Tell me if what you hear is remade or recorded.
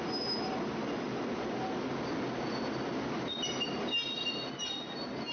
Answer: recorded